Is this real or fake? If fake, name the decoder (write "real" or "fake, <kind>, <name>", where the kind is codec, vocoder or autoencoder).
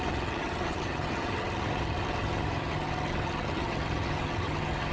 fake, vocoder, HiFi-GAN